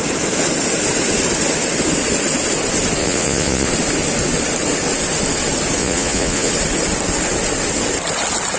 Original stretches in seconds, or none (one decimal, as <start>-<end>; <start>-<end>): 0.0-3.0; 3.7-5.8; 6.5-8.6